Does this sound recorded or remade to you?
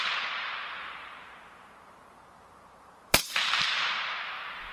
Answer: remade